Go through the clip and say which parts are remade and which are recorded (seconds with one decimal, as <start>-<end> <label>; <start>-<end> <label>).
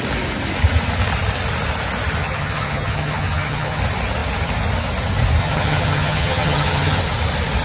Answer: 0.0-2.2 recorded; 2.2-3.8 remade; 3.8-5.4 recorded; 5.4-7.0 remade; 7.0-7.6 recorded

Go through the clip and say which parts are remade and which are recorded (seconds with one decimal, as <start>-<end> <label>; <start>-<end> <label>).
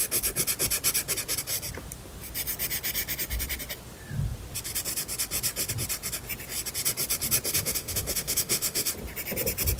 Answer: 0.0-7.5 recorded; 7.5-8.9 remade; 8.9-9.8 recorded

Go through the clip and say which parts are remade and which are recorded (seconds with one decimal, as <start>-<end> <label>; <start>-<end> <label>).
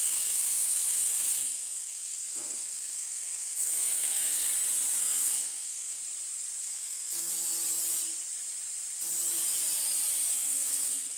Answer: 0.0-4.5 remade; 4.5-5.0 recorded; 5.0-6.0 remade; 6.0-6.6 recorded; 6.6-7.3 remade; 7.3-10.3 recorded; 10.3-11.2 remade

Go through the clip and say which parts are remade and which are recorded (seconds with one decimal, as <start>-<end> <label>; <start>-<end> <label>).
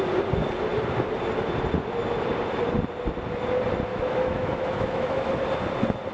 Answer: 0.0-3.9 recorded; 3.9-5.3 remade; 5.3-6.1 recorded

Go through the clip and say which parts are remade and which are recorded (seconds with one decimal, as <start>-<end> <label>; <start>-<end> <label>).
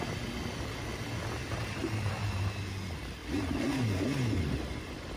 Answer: 0.0-1.4 recorded; 1.4-2.5 remade; 2.5-5.2 recorded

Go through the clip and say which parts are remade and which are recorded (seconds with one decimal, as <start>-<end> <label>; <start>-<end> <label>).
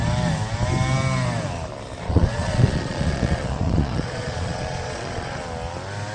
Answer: 0.0-2.0 recorded; 2.0-5.4 remade; 5.4-6.1 recorded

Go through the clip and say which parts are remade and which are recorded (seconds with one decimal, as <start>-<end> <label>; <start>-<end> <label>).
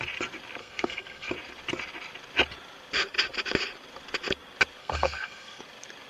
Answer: 0.0-0.6 recorded; 0.6-1.3 remade; 1.3-4.8 recorded; 4.8-5.6 remade; 5.6-6.1 recorded